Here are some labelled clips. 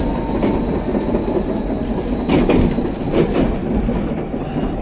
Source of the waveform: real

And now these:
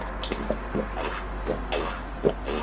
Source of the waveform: real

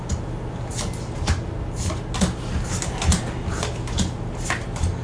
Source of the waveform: real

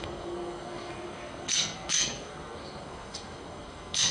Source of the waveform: fake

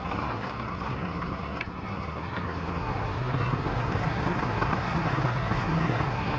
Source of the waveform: fake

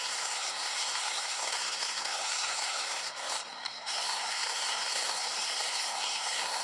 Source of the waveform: fake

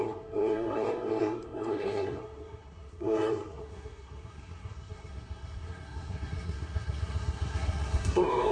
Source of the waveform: fake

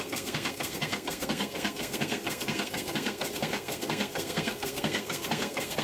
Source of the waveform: fake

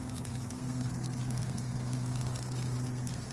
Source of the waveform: fake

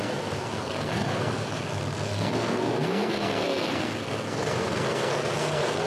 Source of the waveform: fake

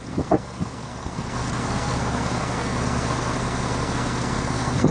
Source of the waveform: fake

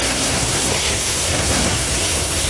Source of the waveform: fake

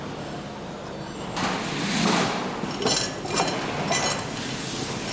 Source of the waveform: real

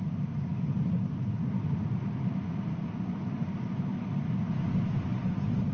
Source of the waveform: real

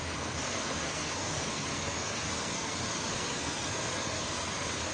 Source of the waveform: fake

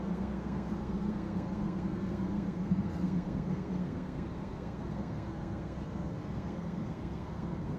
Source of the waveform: fake